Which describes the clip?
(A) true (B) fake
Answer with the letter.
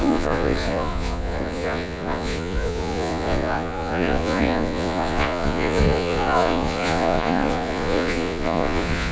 B